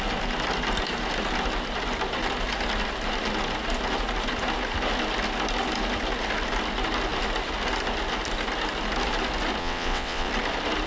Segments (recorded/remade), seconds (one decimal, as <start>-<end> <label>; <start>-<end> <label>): 0.0-9.6 recorded; 9.6-10.3 remade; 10.3-10.9 recorded